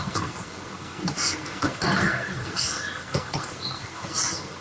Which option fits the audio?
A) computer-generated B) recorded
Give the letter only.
A